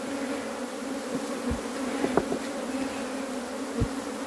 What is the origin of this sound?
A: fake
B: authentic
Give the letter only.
B